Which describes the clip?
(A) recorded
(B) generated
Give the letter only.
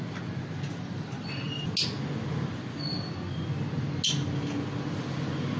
A